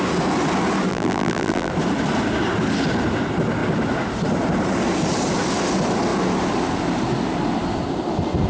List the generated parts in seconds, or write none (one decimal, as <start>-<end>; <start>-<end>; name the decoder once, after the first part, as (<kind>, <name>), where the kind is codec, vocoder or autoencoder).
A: 0.9-1.7 (vocoder, BigVGAN v2)